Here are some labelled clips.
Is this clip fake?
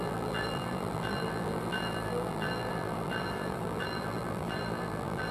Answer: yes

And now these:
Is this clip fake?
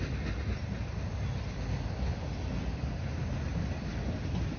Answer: no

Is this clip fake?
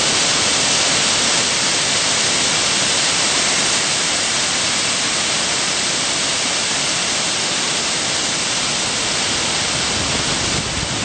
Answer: no